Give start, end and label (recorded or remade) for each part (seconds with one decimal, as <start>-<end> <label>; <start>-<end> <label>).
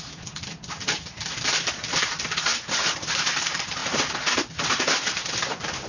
0.0-5.9 recorded